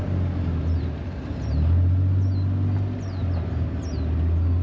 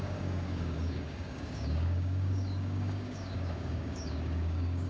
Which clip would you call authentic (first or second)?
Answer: first